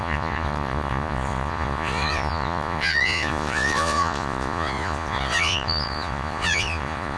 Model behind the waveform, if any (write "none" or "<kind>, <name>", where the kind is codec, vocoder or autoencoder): vocoder, Vocos